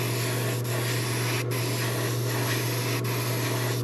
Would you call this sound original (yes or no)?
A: yes